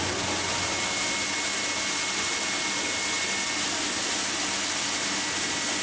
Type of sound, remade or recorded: recorded